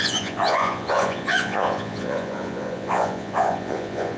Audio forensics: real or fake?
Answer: fake